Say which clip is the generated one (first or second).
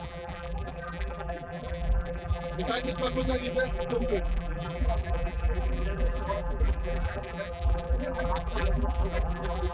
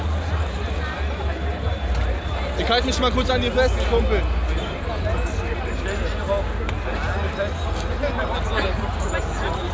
first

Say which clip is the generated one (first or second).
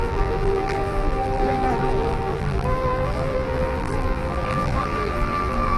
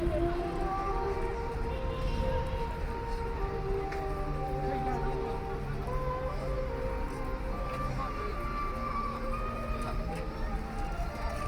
first